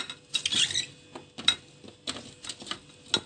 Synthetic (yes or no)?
no